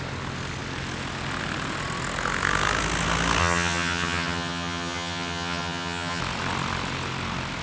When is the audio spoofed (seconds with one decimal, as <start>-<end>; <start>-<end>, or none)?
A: 3.4-6.2